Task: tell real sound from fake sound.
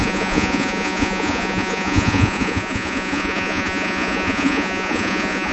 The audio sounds fake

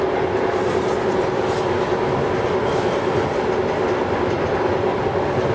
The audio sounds real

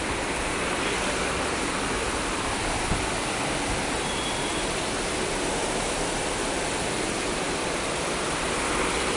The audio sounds fake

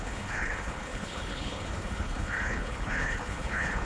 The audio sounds fake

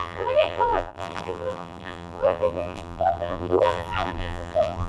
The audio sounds fake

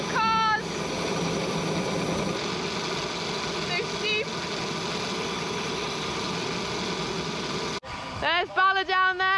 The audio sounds real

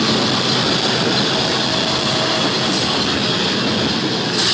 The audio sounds real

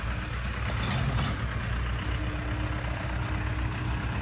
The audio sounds real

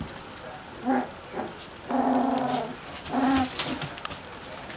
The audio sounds real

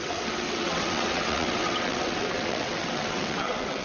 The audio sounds fake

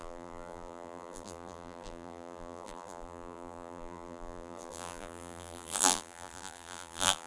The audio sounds fake